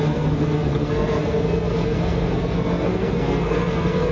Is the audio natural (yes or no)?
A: no